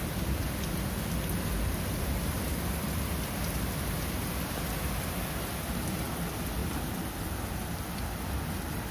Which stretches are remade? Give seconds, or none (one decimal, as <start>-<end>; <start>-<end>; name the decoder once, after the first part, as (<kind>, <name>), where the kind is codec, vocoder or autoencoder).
6.6-8.9 (vocoder, BigVGAN v2)